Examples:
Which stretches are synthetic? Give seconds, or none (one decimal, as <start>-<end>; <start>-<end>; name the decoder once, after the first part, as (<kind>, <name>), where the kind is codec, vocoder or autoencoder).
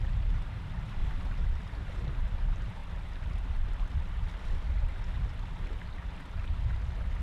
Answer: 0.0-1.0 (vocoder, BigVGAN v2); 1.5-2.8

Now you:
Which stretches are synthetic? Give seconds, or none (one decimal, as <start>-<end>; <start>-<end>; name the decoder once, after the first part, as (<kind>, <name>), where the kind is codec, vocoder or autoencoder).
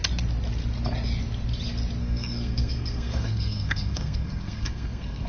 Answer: 2.0-5.3 (codec, SNAC)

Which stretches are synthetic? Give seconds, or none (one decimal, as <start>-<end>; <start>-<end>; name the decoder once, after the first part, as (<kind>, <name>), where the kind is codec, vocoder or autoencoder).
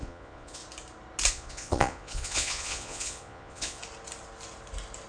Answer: 0.0-0.6 (vocoder, Vocos); 1.3-3.8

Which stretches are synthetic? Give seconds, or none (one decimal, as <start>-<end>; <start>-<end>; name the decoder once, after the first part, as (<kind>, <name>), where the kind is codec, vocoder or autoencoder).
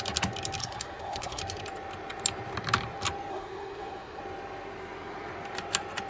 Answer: 0.6-1.4 (codec, SNAC); 3.3-4.2